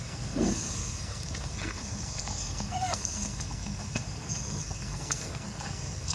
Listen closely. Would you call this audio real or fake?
fake